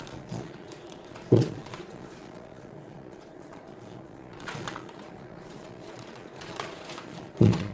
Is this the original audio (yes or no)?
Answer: no